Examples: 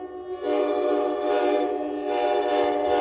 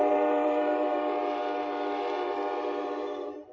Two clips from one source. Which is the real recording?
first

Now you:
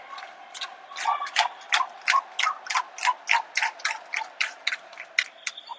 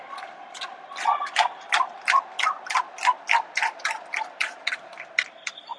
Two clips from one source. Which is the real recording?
first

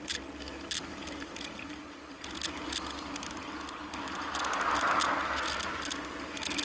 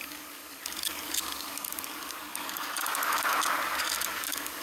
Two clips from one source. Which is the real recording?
first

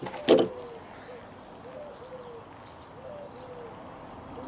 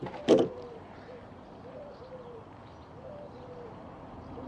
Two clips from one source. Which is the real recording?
first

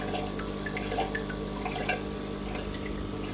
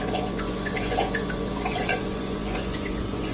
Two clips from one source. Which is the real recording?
first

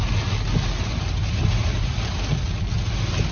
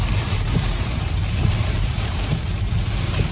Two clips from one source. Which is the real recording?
first